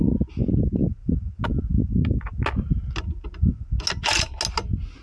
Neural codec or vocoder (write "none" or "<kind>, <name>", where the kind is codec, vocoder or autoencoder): none